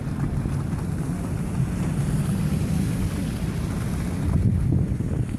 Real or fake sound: real